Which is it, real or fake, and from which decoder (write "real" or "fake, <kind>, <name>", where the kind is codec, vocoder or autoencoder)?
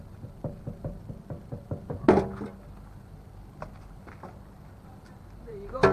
real